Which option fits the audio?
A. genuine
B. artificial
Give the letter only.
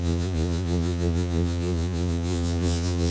B